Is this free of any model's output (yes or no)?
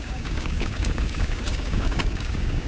no